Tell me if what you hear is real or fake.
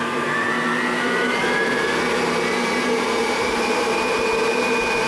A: fake